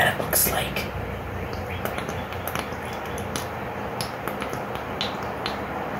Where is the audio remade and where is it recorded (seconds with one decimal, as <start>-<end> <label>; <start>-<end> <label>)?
0.0-0.4 recorded; 0.4-1.7 remade; 1.7-6.0 recorded